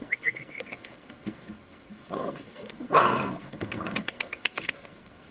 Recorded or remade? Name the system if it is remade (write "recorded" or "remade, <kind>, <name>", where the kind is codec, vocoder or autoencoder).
remade, codec, SNAC